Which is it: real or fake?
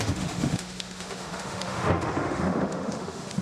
fake